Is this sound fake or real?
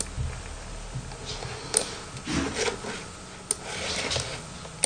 real